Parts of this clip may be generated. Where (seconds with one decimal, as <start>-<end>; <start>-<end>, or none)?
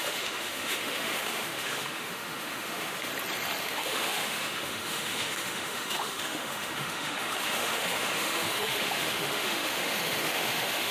0.0-3.1; 3.6-10.9